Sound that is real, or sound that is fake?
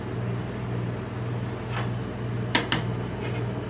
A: real